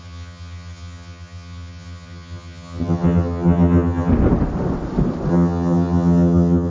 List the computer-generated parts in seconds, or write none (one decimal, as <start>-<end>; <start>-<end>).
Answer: 0.0-4.1; 5.3-6.7